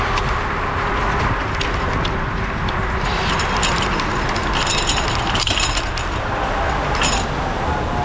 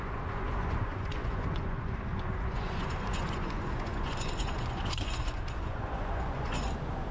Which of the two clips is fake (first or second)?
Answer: second